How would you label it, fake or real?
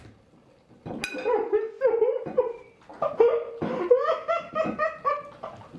real